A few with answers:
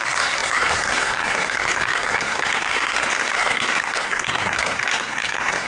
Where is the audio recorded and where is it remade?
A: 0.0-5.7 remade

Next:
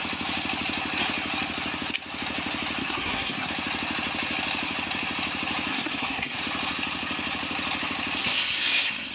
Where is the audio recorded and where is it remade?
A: 0.0-2.8 recorded; 2.8-3.5 remade; 3.5-5.7 recorded; 5.7-6.4 remade; 6.4-8.2 recorded; 8.2-9.1 remade

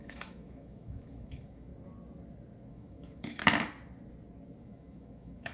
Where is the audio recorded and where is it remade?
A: 0.0-1.7 remade; 1.7-2.7 recorded; 2.7-3.4 remade; 3.4-4.6 recorded; 4.6-5.5 remade

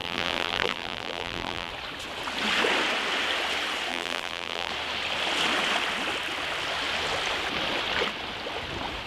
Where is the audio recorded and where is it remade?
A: 0.0-1.7 remade; 1.7-3.9 recorded; 3.9-4.7 remade; 4.7-9.1 recorded

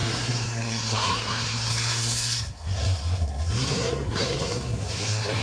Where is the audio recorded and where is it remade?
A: 0.0-5.4 remade

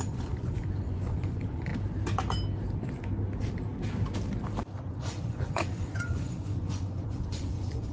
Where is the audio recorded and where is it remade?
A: 0.0-1.7 remade; 1.7-4.9 recorded; 4.9-7.9 remade

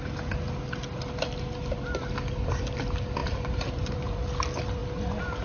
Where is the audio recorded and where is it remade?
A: 0.0-3.2 recorded; 3.2-4.2 remade; 4.2-5.4 recorded